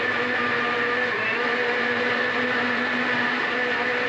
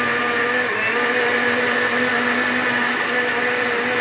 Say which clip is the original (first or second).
second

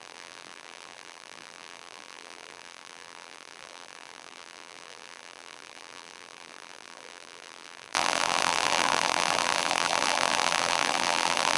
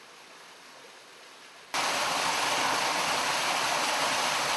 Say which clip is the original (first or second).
second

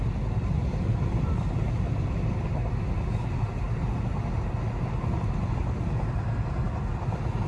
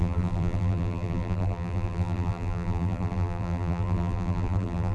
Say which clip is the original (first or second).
first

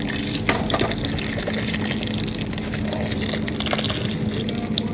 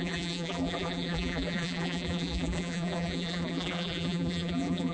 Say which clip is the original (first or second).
first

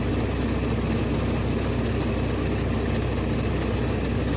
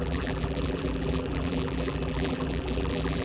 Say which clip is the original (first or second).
first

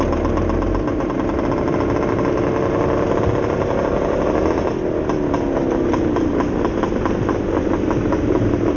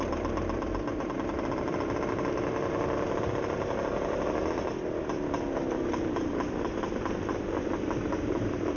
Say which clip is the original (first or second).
first